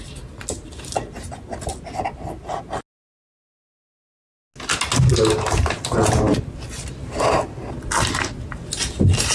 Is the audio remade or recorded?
recorded